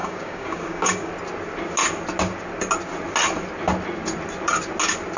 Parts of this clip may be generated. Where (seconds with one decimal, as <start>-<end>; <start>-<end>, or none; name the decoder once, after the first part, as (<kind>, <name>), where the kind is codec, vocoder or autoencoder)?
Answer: 0.0-1.1 (codec, DAC)